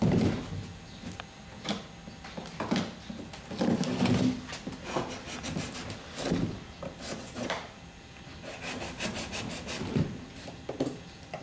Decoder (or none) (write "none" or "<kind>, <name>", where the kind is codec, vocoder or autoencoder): none